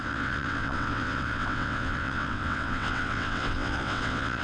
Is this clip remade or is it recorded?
remade